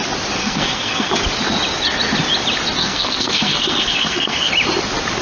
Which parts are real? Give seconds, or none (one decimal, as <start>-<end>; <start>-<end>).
0.0-0.4; 1.1-2.8; 4.5-5.2